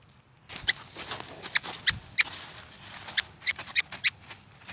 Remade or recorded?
recorded